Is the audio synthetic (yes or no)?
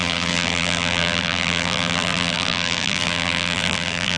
yes